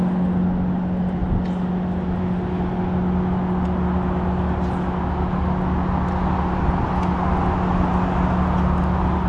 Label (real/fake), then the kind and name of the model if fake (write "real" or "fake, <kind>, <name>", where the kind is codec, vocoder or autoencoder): real